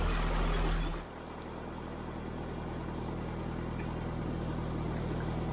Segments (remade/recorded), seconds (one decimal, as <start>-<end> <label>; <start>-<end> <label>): 0.0-5.5 recorded